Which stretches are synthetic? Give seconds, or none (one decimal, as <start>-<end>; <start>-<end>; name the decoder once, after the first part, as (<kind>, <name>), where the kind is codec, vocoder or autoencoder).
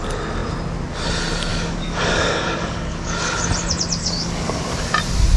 1.5-3.4 (codec, DAC); 4.0-4.6